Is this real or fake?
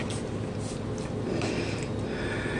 real